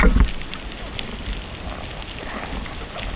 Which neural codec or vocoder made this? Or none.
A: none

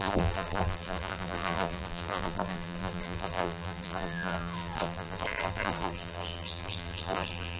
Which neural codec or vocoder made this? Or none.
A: vocoder, BigVGAN v2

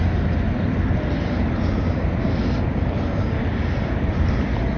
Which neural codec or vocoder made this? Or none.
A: none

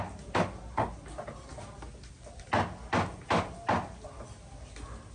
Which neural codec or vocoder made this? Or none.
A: none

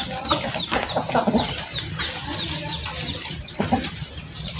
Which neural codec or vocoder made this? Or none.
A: vocoder, BigVGAN v2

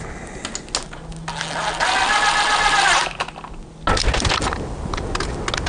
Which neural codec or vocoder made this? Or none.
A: none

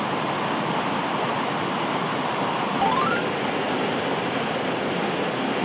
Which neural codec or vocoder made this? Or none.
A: none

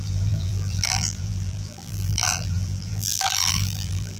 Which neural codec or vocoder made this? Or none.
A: vocoder, BigVGAN v2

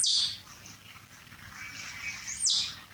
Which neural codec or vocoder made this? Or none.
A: none